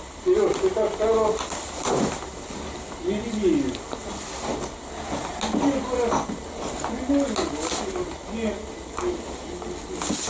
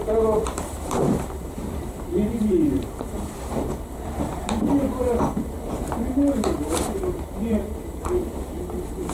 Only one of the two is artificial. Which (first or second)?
second